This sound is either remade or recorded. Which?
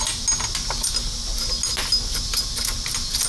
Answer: recorded